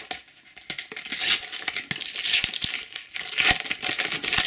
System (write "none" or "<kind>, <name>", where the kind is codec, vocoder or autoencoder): none